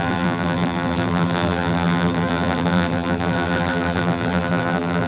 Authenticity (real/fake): fake